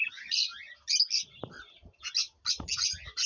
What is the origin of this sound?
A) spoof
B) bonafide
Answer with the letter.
B